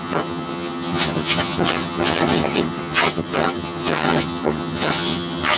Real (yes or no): no